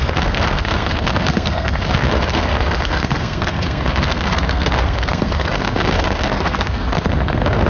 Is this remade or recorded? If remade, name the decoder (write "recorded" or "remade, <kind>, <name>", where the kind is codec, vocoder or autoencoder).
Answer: remade, codec, SNAC